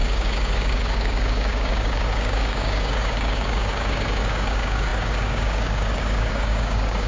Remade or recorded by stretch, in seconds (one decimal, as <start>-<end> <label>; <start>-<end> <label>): 0.0-7.1 remade